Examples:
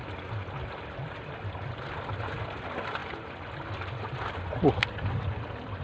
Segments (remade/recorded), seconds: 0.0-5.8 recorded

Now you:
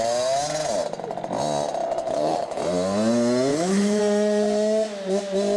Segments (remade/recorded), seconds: 0.0-2.0 recorded; 2.0-2.6 remade; 2.6-3.5 recorded; 3.5-4.0 remade; 4.0-5.6 recorded

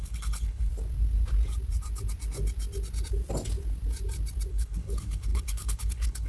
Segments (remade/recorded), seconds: 0.0-0.7 remade; 0.7-4.5 recorded; 4.5-6.3 remade

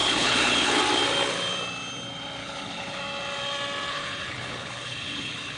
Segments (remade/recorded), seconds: 0.0-0.8 remade; 0.8-2.4 recorded; 2.4-3.0 remade; 3.0-3.9 recorded; 3.9-5.6 remade

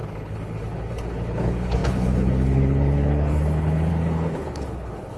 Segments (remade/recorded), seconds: 0.0-5.2 remade

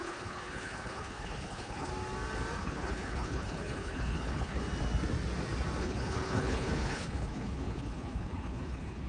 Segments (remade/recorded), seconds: 0.0-1.9 remade; 1.9-2.6 recorded; 2.6-4.6 remade; 4.6-5.8 recorded; 5.8-9.1 remade

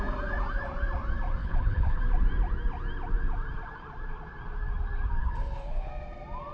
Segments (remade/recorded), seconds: 0.0-1.4 recorded; 1.4-2.0 remade; 2.0-5.2 recorded; 5.2-5.9 remade; 5.9-6.5 recorded

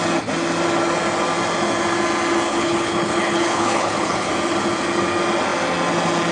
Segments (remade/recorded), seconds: 0.0-2.5 recorded; 2.5-4.3 remade; 4.3-6.3 recorded